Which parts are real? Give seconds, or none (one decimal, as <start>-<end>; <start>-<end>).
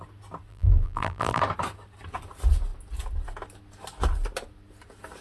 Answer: 0.0-0.5; 1.4-5.2